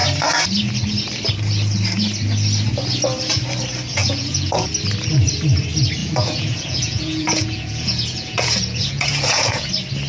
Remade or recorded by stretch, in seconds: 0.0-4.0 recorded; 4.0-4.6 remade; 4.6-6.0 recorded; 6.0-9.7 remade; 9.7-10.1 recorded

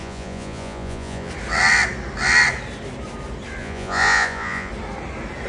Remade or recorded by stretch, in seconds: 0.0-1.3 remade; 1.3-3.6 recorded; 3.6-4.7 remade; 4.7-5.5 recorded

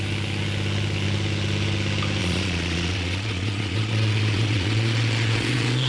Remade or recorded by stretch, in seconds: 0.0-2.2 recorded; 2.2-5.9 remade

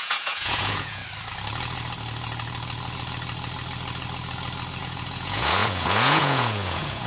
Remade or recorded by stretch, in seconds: 0.0-1.0 remade; 1.0-4.8 recorded; 4.8-7.1 remade

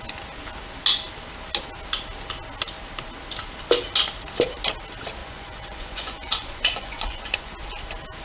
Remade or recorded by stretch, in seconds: 0.0-5.2 recorded; 5.2-7.5 remade; 7.5-8.2 recorded

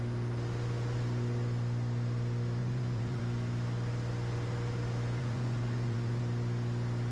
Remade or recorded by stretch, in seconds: 0.0-2.6 recorded; 2.6-3.2 remade; 3.2-5.2 recorded; 5.2-6.2 remade; 6.2-7.1 recorded

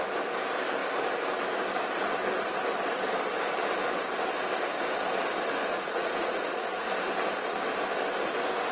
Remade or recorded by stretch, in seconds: 0.0-5.7 recorded; 5.7-6.9 remade; 6.9-8.7 recorded